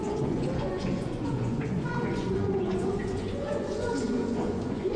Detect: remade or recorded remade